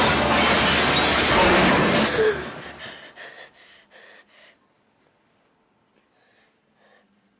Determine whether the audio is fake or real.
real